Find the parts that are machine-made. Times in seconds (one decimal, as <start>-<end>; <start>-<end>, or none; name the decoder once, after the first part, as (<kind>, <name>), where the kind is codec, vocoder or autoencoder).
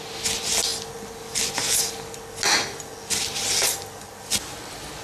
none